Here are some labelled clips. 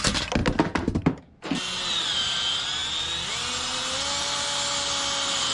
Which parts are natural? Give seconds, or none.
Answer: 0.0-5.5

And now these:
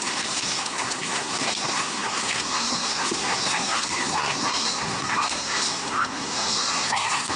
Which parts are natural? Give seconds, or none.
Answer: none

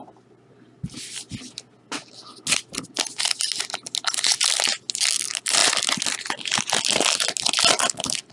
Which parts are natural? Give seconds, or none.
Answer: 0.0-8.3

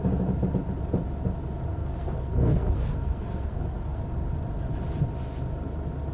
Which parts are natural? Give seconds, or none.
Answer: 0.0-1.7; 4.0-6.1

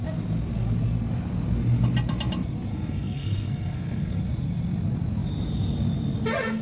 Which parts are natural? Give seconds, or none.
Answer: 0.0-2.7; 4.2-6.6

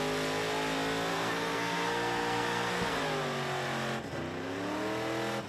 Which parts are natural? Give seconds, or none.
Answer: 0.0-1.1; 3.0-5.5

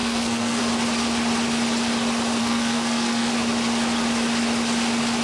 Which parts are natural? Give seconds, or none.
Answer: 0.6-2.4; 3.3-5.2